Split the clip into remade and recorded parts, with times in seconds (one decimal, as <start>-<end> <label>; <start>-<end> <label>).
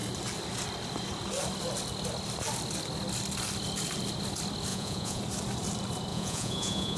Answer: 0.0-4.7 recorded; 4.7-5.2 remade; 5.2-6.1 recorded; 6.1-7.0 remade